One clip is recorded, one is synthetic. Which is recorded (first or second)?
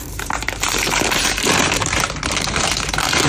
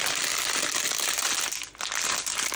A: second